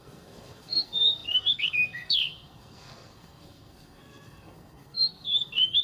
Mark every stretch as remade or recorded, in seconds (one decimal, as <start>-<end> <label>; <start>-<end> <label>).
0.0-5.8 remade